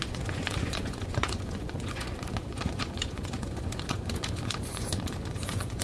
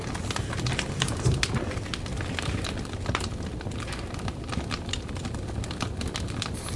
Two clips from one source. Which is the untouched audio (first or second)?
second